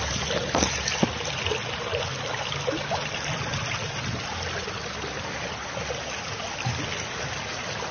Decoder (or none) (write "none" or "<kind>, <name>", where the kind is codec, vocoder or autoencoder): none